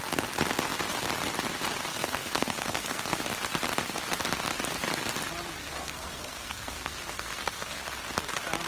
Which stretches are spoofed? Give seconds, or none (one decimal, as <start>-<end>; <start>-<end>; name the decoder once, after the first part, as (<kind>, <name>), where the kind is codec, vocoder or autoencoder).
1.9-3.2 (codec, SNAC); 5.6-7.8